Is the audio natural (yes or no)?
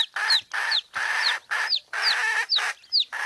yes